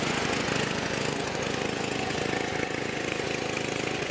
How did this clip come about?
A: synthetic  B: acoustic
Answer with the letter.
A